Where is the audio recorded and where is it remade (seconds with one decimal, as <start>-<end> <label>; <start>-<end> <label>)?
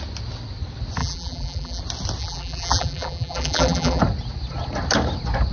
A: 0.0-1.0 recorded; 1.0-1.8 remade; 1.8-2.2 recorded; 2.2-4.0 remade; 4.0-5.5 recorded